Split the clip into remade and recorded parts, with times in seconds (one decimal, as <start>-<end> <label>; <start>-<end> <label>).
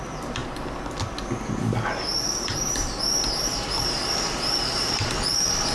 0.0-0.4 remade; 0.4-3.8 recorded; 3.8-5.7 remade